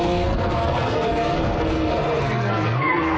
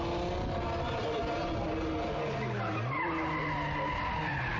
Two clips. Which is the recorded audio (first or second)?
second